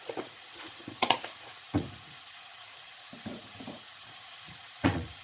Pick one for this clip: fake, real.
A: fake